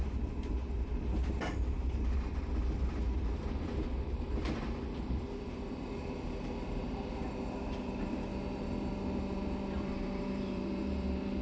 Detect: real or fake fake